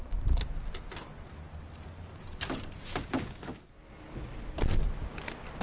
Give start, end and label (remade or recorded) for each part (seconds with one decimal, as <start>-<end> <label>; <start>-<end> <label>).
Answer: 0.0-5.6 recorded